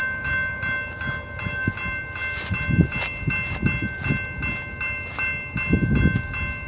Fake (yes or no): no